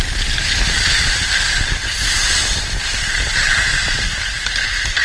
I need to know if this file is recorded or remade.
recorded